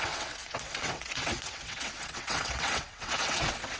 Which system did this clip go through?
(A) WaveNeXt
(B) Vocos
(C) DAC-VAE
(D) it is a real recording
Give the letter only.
A